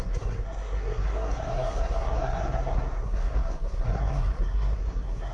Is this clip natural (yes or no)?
no